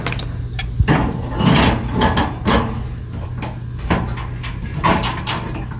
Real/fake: real